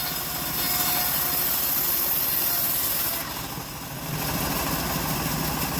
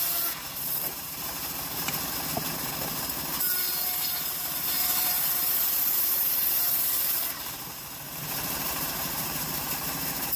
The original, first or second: first